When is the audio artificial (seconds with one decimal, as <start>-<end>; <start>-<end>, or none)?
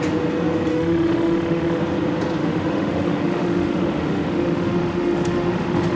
0.7-1.8; 2.4-6.0